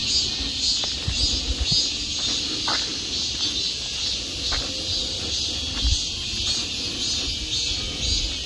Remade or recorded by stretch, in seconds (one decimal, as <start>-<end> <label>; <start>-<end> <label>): 0.0-8.5 recorded